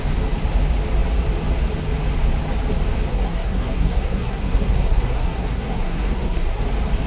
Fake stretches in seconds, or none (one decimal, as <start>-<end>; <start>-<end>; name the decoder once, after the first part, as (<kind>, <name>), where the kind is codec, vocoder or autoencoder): 3.1-6.6 (codec, SNAC)